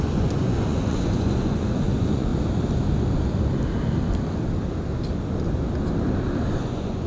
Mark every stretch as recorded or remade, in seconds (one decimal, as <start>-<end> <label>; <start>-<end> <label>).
0.0-2.3 remade; 2.3-6.6 recorded; 6.6-7.1 remade